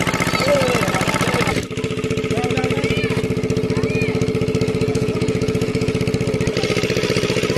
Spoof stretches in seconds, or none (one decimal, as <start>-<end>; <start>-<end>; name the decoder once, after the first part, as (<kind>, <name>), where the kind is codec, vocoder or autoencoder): 4.9-6.0 (vocoder, Vocos)